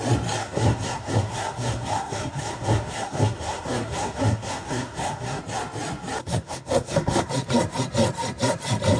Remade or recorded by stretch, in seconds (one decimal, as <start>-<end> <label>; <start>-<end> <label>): 0.0-0.4 recorded; 0.4-5.4 remade; 5.4-6.2 recorded; 6.2-7.3 remade; 7.3-9.0 recorded